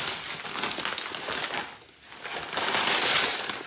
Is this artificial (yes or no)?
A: no